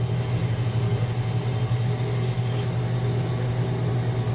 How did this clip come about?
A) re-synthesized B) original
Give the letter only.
B